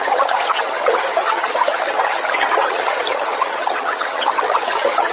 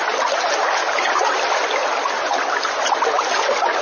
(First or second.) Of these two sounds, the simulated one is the first